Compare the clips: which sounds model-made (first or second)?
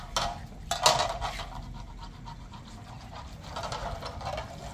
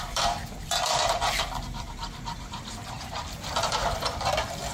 second